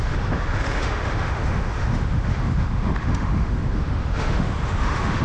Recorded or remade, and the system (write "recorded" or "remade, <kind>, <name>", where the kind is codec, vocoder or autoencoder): remade, autoencoder, DAC-VAE